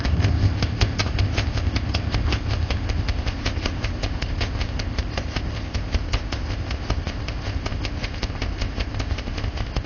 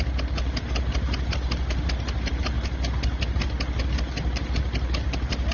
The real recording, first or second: second